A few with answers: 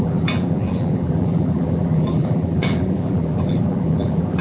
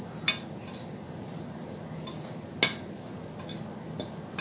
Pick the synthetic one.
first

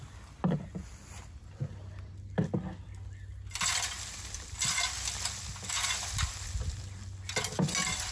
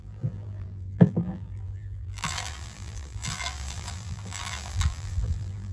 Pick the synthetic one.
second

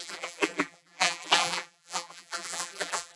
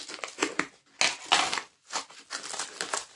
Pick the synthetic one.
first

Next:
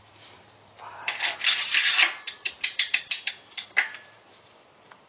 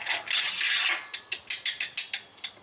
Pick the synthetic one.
first